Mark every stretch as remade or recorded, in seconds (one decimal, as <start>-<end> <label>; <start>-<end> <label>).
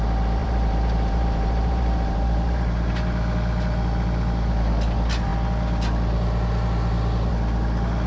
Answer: 0.0-0.4 recorded; 0.4-2.9 remade; 2.9-8.1 recorded